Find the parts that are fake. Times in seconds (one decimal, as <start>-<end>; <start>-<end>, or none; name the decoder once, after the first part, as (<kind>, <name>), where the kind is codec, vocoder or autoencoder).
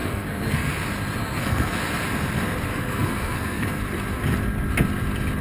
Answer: 0.0-0.7 (codec, SNAC); 1.2-1.8; 2.7-3.8